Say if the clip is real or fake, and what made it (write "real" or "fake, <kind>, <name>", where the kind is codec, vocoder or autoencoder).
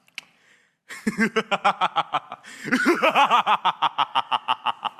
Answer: real